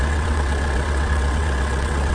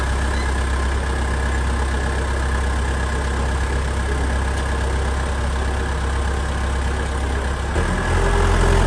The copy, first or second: first